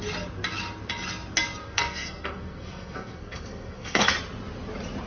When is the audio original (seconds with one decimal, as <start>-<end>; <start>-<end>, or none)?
0.0-1.6; 4.1-5.1